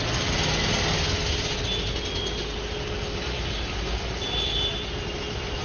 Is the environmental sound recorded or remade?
recorded